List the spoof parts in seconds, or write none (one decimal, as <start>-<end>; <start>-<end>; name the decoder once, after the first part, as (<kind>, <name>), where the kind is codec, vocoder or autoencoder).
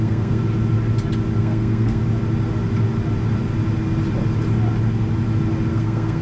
0.0-0.4 (codec, SNAC); 1.4-2.0; 5.7-6.2